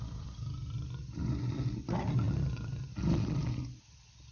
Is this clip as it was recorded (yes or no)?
yes